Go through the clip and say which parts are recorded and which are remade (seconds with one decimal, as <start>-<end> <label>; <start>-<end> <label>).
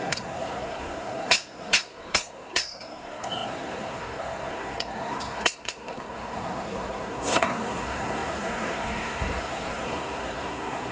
0.0-10.9 remade